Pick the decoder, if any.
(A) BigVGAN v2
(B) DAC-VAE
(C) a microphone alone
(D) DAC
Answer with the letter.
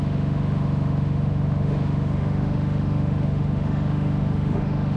B